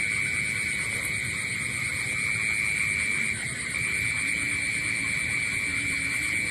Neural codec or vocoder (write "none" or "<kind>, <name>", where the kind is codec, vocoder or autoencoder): none